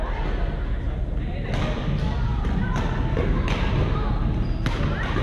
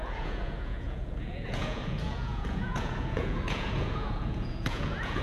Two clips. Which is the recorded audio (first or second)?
first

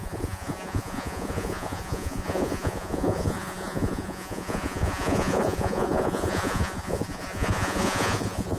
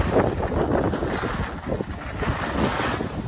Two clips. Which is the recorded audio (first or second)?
second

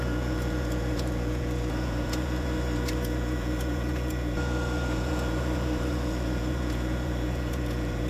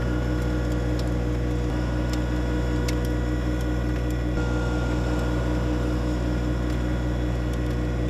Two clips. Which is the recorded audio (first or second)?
second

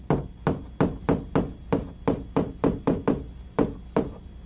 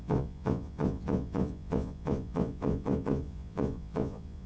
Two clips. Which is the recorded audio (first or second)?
first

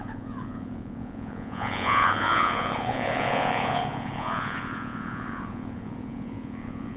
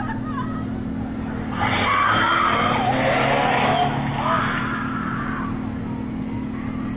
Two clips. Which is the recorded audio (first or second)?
second